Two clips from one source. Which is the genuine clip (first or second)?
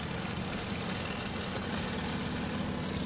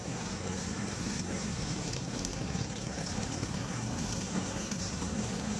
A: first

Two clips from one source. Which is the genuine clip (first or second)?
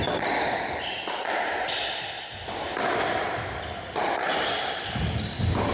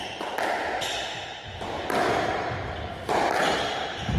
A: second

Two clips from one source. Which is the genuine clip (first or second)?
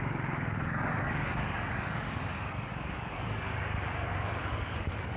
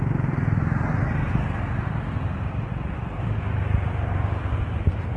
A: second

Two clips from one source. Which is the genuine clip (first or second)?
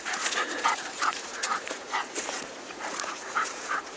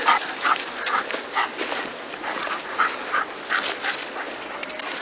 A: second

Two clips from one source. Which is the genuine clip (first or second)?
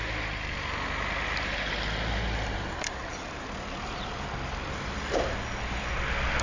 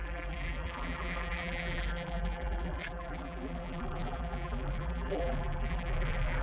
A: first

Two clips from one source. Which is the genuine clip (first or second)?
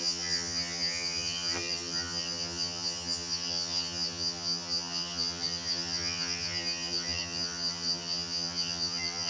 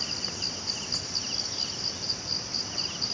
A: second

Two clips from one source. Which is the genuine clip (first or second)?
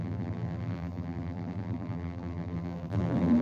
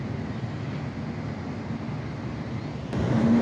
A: second